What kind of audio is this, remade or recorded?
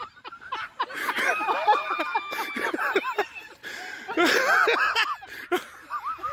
recorded